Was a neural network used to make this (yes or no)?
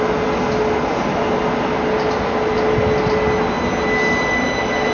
no